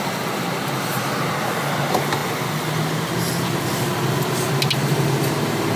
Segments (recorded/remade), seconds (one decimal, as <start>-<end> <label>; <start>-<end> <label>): 0.0-5.8 recorded